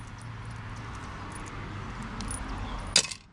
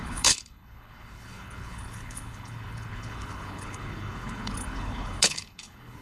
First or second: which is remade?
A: second